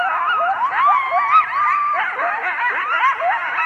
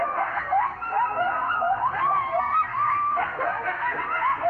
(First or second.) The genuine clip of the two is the first